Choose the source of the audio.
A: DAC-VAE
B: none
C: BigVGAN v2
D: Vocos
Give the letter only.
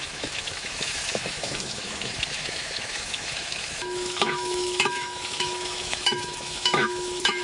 A